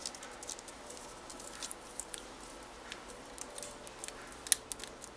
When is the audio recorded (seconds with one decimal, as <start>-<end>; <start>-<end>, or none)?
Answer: 0.0-5.2